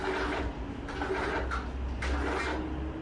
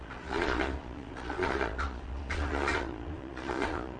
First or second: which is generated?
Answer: second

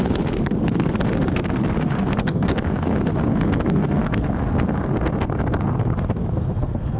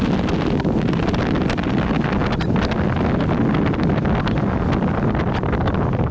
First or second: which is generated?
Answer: first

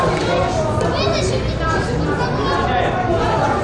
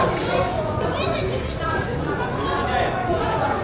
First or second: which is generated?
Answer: second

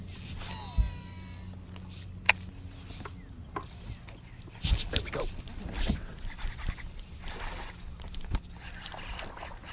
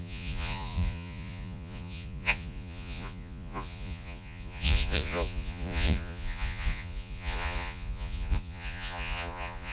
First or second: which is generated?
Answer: second